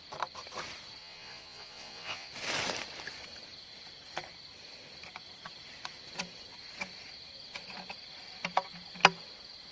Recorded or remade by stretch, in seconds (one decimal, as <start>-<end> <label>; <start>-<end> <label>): 0.0-1.0 recorded; 1.0-2.3 remade; 2.3-9.7 recorded